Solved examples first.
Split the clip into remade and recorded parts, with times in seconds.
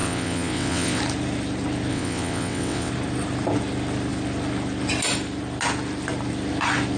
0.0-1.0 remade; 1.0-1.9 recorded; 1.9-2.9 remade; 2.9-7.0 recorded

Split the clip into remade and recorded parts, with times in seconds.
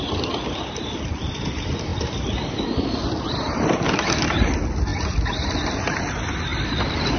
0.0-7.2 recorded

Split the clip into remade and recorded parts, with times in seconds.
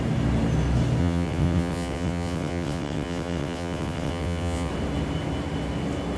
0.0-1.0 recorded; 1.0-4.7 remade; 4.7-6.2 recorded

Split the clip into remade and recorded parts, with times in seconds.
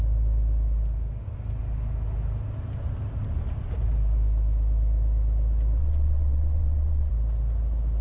0.0-5.8 recorded; 5.8-7.1 remade; 7.1-8.0 recorded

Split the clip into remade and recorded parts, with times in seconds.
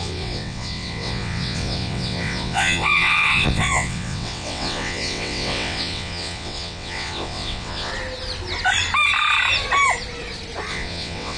0.0-7.9 remade; 7.9-10.7 recorded; 10.7-11.4 remade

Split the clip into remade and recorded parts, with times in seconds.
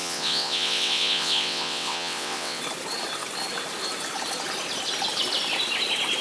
0.0-2.6 remade; 2.6-6.2 recorded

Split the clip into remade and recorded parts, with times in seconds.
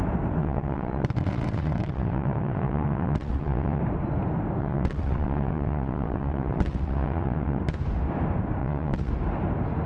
0.0-0.4 recorded; 0.4-3.8 remade; 3.8-4.6 recorded; 4.6-7.6 remade; 7.6-8.6 recorded; 8.6-9.1 remade; 9.1-9.9 recorded